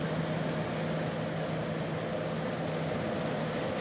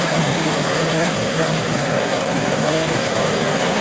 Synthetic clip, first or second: second